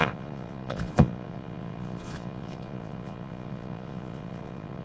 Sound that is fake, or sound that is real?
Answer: fake